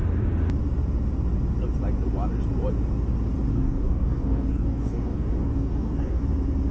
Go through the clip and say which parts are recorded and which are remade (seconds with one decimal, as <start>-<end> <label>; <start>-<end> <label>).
0.0-3.5 recorded; 3.5-6.2 remade; 6.2-6.7 recorded